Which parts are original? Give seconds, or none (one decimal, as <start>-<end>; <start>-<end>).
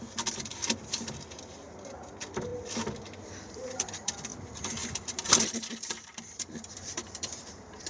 2.5-3.5; 4.3-5.3